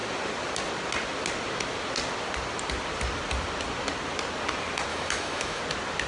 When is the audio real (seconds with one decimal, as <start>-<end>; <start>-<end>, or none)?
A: 0.0-4.9; 5.6-6.1